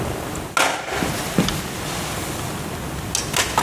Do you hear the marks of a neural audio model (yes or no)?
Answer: no